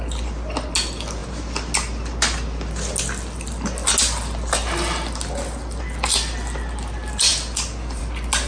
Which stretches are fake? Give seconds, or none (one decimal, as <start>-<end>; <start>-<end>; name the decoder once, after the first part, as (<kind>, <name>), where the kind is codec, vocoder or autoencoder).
none